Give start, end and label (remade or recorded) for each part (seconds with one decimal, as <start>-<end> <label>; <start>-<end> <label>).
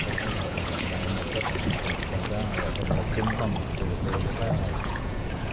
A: 0.0-2.7 remade; 2.7-3.7 recorded; 3.7-5.5 remade